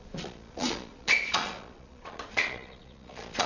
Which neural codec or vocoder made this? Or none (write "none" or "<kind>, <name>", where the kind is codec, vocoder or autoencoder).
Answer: vocoder, Vocos